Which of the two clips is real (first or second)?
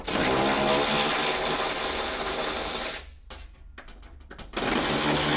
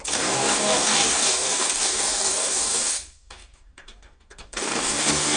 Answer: first